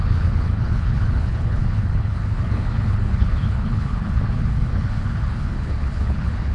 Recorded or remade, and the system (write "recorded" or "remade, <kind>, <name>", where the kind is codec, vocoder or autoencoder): remade, codec, HILCodec